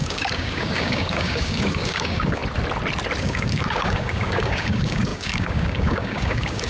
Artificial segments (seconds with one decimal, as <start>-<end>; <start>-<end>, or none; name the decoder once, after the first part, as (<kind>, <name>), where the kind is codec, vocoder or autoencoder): 0.0-2.4 (codec, DAC); 3.2-6.7